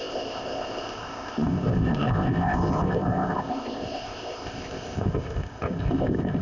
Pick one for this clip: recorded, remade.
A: remade